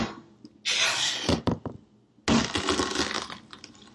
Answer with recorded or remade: recorded